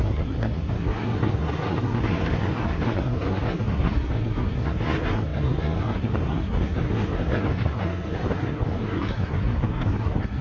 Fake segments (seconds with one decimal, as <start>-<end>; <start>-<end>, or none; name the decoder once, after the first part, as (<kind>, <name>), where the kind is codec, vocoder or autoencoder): 0.0-10.4 (codec, SNAC)